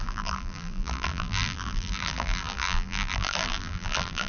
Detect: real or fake fake